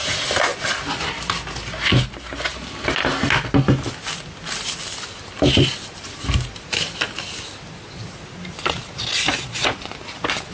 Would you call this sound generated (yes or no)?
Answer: no